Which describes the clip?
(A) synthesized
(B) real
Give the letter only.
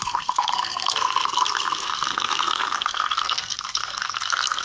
A